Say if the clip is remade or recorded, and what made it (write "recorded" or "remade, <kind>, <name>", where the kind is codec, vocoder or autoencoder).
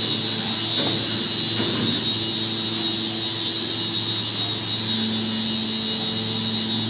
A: recorded